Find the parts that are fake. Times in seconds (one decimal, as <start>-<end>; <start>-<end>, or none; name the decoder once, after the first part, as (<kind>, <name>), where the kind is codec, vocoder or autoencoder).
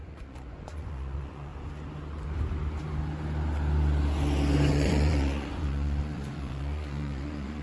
0.0-1.5 (vocoder, Vocos); 4.7-7.6